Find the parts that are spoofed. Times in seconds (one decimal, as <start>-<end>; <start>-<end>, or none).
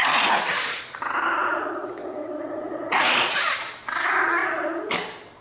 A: 0.0-0.8; 1.4-3.5; 4.4-4.9